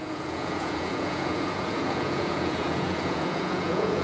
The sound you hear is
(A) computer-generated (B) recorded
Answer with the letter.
A